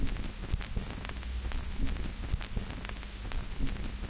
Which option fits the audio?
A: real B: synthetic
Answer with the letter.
A